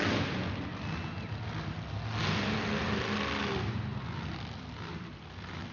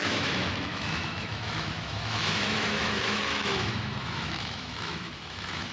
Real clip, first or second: first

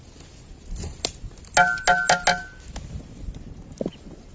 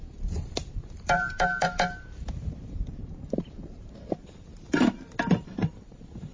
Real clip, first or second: first